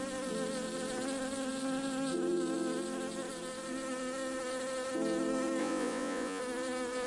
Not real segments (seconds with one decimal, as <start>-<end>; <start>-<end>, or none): 5.6-6.4